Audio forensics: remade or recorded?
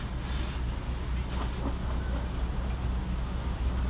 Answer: recorded